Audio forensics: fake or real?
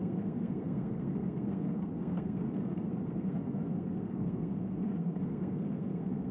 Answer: fake